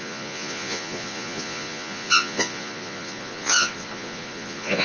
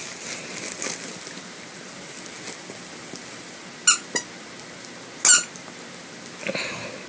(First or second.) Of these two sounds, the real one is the second